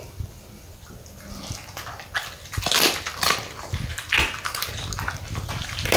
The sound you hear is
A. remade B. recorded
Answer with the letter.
B